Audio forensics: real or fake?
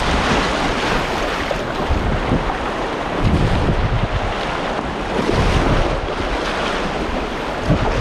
real